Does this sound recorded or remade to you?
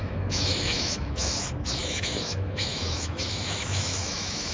remade